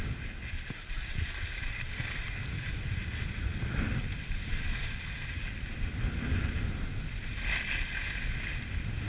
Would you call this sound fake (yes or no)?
no